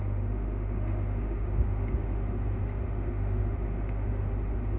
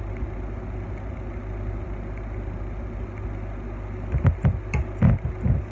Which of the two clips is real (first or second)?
second